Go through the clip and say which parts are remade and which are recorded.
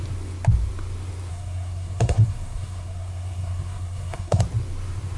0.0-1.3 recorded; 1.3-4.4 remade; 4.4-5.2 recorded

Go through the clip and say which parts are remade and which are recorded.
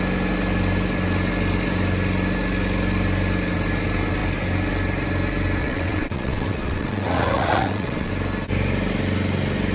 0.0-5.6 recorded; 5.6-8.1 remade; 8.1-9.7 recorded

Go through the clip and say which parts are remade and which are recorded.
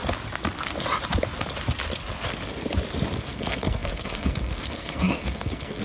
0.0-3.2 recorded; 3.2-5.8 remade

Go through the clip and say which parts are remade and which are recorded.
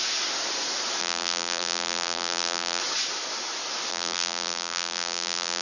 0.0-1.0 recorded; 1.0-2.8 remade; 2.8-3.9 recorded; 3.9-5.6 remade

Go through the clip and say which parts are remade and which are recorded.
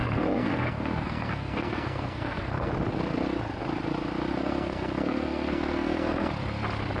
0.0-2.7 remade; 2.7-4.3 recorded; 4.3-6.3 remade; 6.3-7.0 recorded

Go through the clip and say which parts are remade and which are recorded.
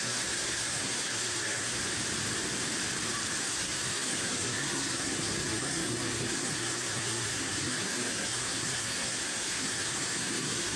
0.0-1.8 remade; 1.8-3.4 recorded; 3.4-10.8 remade